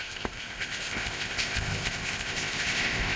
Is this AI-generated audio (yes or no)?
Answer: yes